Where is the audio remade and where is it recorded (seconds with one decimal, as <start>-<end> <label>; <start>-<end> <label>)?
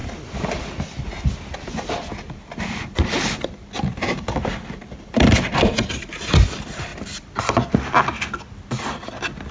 0.0-0.8 remade; 0.8-6.9 recorded; 6.9-7.4 remade; 7.4-9.5 recorded